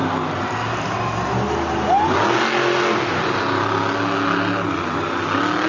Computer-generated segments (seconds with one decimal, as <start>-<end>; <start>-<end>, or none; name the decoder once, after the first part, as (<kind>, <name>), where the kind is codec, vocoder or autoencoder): none

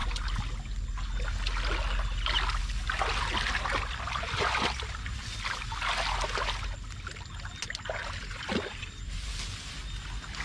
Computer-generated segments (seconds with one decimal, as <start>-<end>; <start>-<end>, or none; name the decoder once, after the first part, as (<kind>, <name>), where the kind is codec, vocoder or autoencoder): 8.7-9.3 (vocoder, BigVGAN v2)

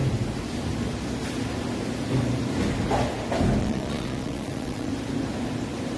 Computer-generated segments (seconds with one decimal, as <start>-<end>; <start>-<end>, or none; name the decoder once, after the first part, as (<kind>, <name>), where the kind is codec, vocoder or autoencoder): 3.6-4.9 (vocoder, Vocos)